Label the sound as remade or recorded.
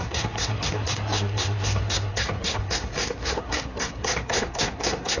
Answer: remade